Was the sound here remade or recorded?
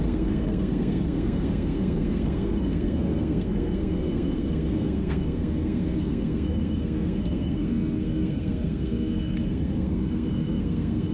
remade